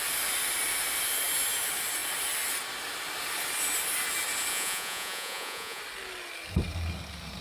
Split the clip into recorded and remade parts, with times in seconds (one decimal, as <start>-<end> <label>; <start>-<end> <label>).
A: 0.0-4.5 recorded; 4.5-5.8 remade; 5.8-7.4 recorded